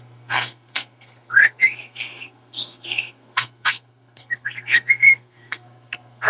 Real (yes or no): no